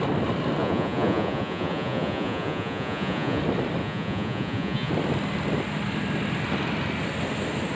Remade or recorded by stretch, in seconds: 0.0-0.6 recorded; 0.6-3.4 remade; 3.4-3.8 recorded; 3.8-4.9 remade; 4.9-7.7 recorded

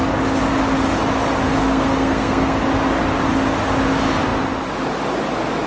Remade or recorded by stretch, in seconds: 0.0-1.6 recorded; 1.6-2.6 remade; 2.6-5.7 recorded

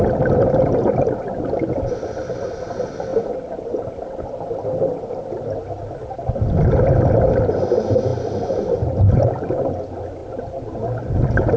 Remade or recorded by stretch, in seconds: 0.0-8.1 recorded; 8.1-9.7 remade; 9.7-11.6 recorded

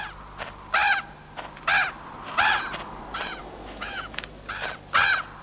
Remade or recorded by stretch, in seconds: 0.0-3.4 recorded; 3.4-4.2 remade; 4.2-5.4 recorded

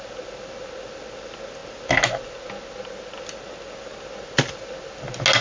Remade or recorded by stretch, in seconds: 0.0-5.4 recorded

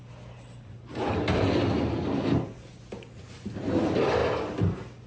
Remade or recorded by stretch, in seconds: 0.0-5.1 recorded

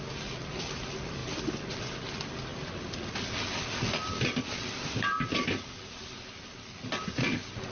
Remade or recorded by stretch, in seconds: 0.0-7.7 recorded

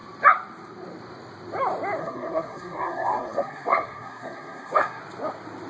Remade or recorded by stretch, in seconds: 0.0-2.0 recorded; 2.0-5.0 remade; 5.0-5.7 recorded